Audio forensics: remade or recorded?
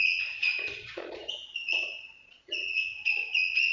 remade